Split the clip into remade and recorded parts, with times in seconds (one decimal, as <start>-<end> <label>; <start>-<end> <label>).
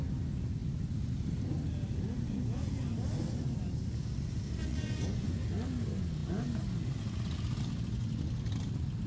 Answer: 0.0-4.6 recorded; 4.6-5.3 remade; 5.3-9.1 recorded